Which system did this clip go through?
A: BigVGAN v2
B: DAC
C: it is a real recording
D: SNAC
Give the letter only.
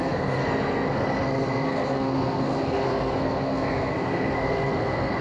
D